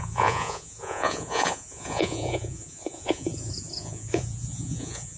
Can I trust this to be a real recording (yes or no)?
no